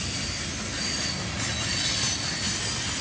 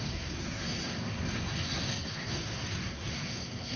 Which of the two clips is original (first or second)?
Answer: first